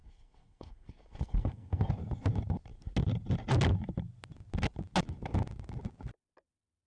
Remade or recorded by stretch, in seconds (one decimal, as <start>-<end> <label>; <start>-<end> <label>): 0.0-1.9 remade; 1.9-6.9 recorded